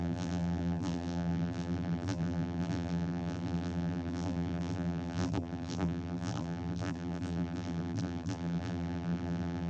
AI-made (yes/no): yes